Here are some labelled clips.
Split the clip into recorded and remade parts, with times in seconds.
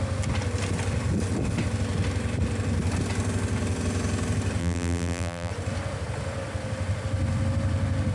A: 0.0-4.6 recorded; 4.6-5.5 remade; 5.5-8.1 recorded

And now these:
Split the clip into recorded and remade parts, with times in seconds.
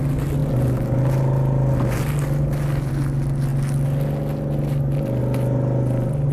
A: 0.0-6.3 recorded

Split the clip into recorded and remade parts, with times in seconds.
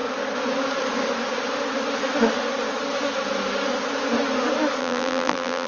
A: 0.0-4.8 recorded; 4.8-5.7 remade